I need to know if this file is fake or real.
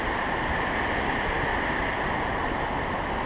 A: real